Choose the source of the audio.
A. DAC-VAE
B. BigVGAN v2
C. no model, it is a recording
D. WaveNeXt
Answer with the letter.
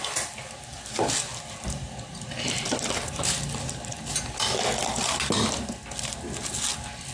C